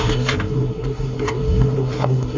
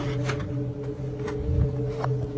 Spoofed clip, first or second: first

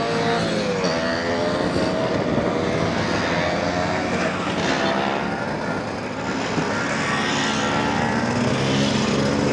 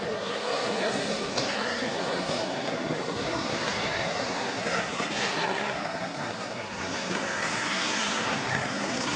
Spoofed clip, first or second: second